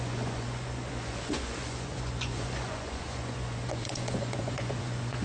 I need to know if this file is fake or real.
fake